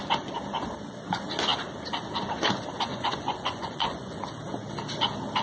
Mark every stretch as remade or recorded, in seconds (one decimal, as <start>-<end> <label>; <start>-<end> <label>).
0.0-2.9 recorded; 2.9-4.2 remade; 4.2-5.4 recorded